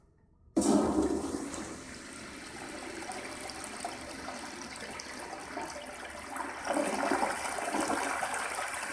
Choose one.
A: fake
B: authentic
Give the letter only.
A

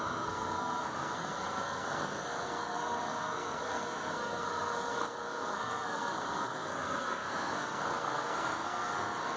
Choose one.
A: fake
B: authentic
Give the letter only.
A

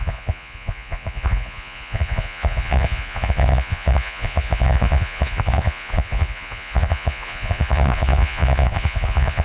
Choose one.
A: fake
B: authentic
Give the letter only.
A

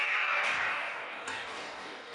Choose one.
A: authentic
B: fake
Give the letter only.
B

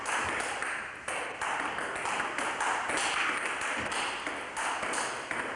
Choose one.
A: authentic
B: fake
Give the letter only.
A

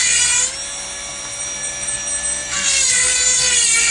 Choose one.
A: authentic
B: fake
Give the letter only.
A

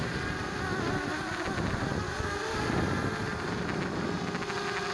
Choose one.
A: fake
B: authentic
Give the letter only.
B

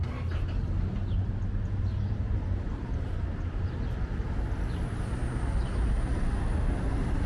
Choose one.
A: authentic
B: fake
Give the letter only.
A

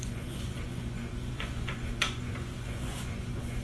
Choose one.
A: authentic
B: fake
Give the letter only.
B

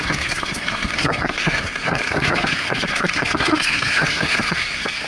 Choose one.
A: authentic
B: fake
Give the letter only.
B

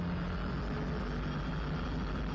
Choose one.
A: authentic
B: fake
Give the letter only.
A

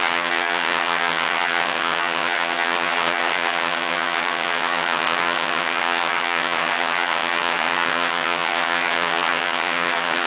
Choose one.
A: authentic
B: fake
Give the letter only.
B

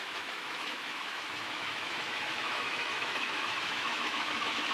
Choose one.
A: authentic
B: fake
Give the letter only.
B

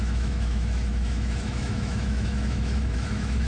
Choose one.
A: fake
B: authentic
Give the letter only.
A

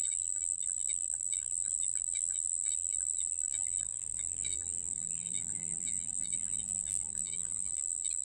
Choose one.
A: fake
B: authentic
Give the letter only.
A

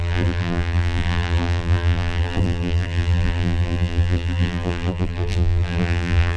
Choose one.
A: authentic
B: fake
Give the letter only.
B